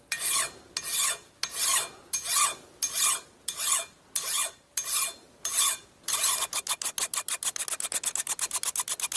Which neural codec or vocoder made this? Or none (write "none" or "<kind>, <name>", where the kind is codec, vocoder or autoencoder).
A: none